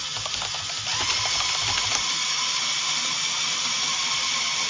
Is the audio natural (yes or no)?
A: yes